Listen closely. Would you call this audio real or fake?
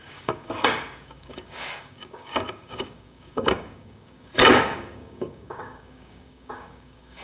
fake